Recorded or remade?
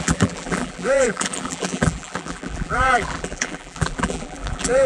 remade